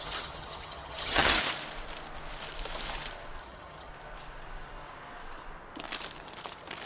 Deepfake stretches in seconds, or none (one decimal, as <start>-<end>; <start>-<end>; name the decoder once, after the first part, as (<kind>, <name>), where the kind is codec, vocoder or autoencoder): 0.0-1.4 (vocoder, HiFi-GAN); 3.4-3.9